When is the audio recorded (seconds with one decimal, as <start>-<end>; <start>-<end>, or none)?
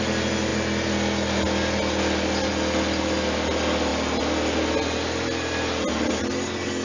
0.0-6.8